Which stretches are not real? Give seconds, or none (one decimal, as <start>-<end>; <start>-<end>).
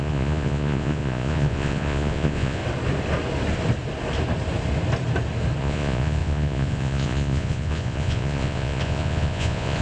0.0-2.6; 5.6-9.8